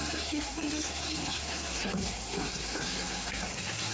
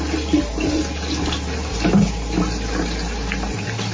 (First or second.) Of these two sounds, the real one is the second